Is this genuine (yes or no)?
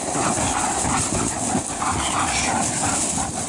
yes